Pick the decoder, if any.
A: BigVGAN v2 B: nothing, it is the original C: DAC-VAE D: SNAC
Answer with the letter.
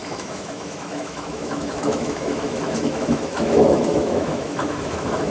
C